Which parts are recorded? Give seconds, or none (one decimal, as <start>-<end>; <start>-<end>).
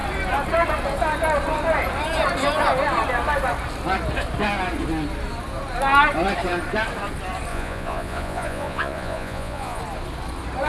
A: 0.0-7.5; 9.8-10.7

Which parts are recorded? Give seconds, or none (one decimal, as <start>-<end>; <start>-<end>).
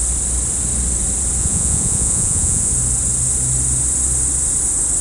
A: 0.0-1.4; 2.7-5.0